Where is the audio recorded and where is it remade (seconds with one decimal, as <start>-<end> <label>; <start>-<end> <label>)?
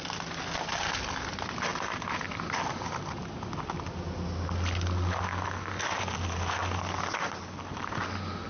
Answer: 0.0-8.5 recorded